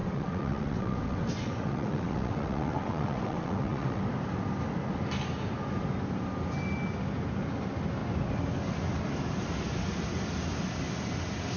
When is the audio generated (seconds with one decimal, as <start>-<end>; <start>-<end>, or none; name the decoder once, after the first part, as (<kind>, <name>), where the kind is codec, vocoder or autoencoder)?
0.0-4.0 (vocoder, WaveNeXt)